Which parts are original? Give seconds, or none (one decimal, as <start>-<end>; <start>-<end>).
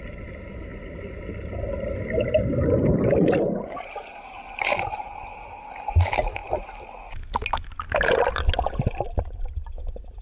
0.7-5.9; 6.4-10.2